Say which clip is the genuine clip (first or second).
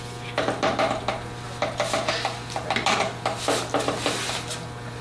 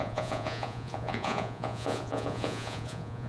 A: first